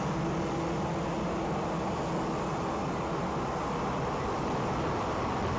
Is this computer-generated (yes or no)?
no